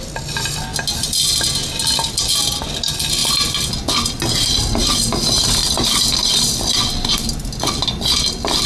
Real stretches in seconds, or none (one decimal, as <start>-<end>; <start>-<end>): 0.0-8.7